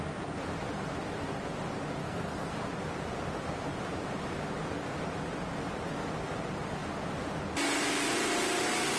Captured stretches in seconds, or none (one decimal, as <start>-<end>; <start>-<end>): 0.0-2.0; 2.5-9.0